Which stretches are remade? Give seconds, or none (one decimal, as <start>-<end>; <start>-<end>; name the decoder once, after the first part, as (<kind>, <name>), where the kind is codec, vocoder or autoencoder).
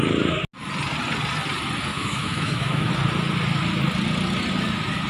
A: 1.9-2.9 (autoencoder, DAC-VAE)